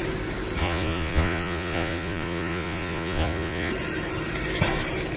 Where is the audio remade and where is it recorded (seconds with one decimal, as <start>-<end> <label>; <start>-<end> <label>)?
0.0-0.6 recorded; 0.6-3.7 remade; 3.7-5.2 recorded